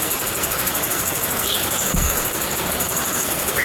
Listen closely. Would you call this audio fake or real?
fake